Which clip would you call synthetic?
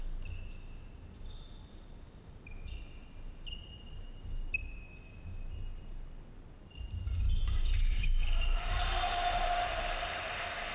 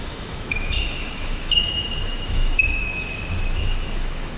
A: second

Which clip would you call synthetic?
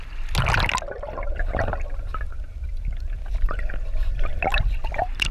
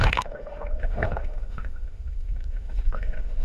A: second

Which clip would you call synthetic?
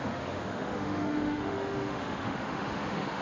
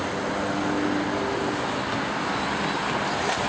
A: first